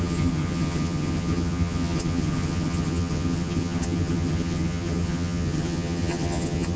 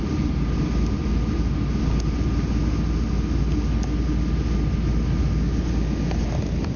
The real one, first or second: second